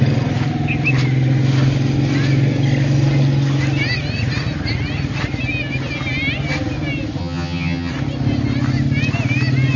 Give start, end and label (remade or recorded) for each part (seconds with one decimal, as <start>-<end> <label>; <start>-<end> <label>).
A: 0.0-7.2 recorded; 7.2-7.9 remade; 7.9-9.8 recorded